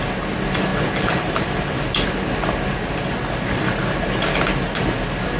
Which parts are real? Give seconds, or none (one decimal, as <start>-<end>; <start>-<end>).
0.0-5.4